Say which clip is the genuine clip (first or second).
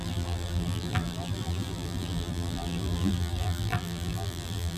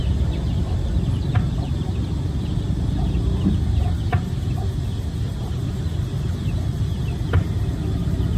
second